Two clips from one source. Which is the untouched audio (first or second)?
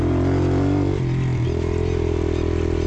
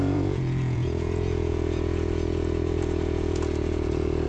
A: first